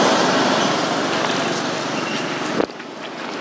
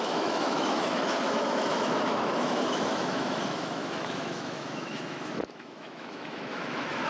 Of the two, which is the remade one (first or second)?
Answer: second